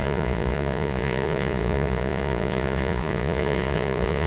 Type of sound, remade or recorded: remade